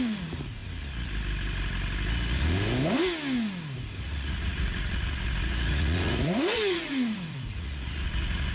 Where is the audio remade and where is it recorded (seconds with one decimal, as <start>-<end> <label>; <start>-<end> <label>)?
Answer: 0.0-0.6 remade; 0.6-4.0 recorded; 4.0-8.5 remade